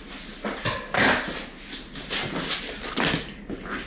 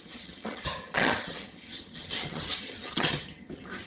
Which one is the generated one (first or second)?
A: second